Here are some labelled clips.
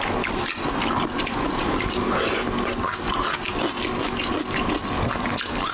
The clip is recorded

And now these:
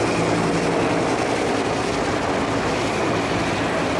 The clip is recorded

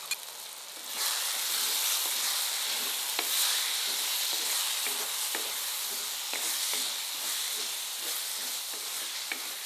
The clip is recorded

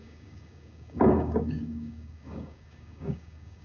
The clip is remade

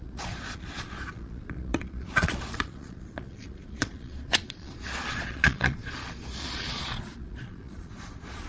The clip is remade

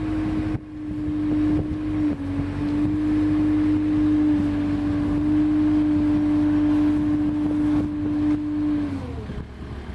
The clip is recorded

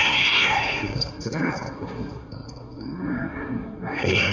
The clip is remade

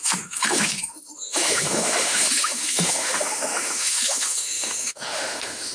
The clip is remade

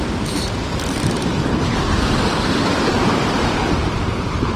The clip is remade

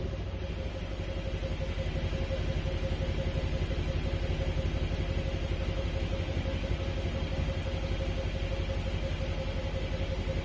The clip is recorded